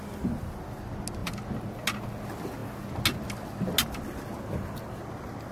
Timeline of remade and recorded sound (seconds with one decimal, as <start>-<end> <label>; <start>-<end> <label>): 0.0-5.5 recorded